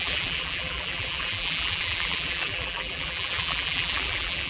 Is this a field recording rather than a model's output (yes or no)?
no